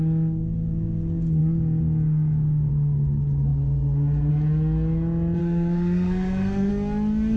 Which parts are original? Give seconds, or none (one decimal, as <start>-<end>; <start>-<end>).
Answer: 0.0-5.4; 6.7-7.4